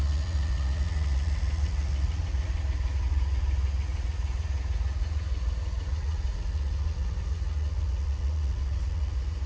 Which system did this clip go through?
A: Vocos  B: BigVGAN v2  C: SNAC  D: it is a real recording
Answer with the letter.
A